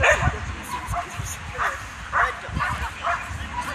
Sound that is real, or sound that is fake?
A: real